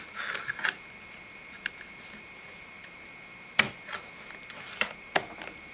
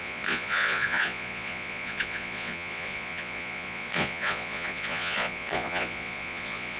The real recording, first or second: first